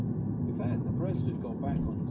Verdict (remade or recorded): recorded